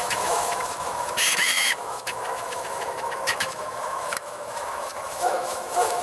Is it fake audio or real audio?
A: fake